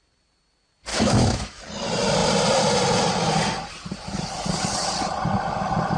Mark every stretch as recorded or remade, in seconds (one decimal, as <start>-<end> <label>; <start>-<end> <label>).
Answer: 0.0-0.9 recorded; 0.9-1.6 remade; 1.6-6.0 recorded